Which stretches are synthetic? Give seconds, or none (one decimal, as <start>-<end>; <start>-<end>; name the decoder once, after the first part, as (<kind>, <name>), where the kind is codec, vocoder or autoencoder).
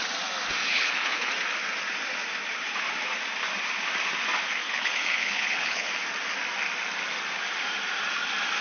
0.6-1.3 (codec, HILCodec); 4.6-5.9